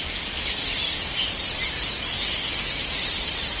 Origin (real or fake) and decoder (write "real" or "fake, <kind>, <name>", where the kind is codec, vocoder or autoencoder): real